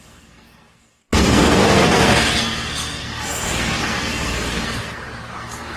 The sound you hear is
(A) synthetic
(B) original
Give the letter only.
A